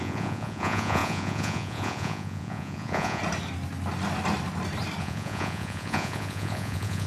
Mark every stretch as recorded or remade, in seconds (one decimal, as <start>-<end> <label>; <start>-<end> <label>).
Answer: 0.0-3.2 remade; 3.2-5.0 recorded; 5.0-7.1 remade